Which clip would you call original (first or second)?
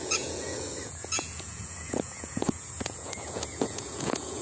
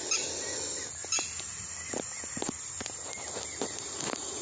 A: second